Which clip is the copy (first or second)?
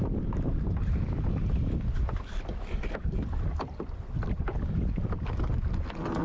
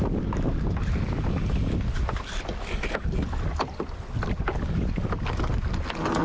first